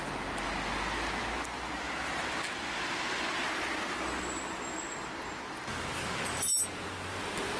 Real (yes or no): yes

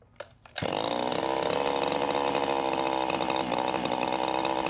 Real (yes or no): yes